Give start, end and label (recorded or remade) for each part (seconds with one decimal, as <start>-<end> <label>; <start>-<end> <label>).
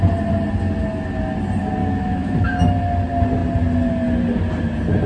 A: 0.0-1.8 recorded; 1.8-2.7 remade; 2.7-5.1 recorded